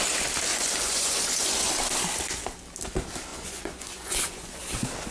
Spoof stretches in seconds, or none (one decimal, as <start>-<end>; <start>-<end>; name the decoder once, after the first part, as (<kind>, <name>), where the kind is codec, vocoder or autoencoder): 0.5-1.7 (vocoder, Vocos); 3.3-4.6